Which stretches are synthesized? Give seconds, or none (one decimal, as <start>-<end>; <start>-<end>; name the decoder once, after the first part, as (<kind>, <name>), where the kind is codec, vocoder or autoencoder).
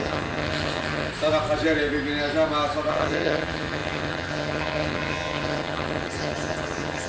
0.0-1.1 (vocoder, HiFi-GAN); 2.9-7.1